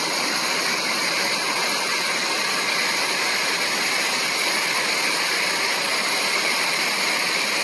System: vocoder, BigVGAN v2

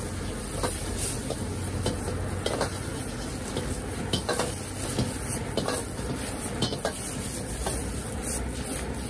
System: none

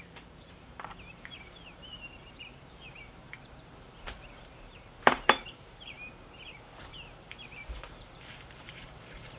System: vocoder, BigVGAN v2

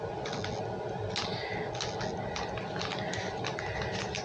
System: none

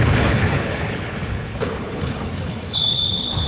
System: codec, HILCodec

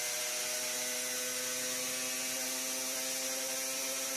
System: none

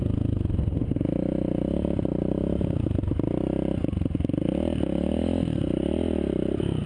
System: none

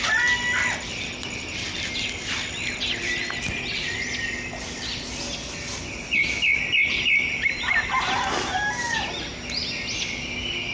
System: none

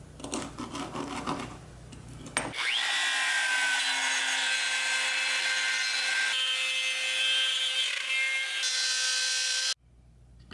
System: none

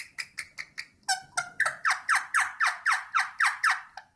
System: none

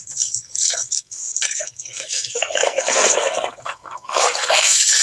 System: codec, SNAC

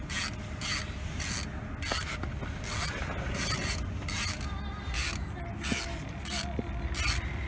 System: none